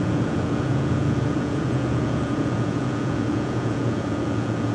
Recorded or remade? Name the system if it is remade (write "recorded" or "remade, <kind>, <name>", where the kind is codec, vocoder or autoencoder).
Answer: remade, vocoder, Vocos